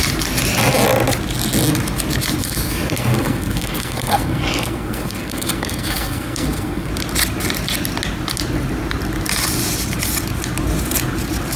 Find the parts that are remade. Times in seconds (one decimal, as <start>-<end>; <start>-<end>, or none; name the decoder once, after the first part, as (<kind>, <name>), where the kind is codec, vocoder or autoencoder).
2.4-6.9 (codec, SNAC)